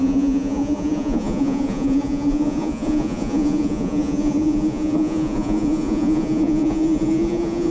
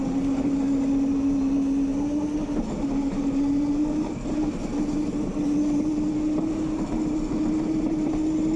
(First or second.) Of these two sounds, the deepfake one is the first